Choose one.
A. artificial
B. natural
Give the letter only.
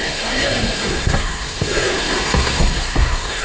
A